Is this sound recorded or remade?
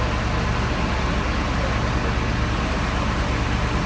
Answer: recorded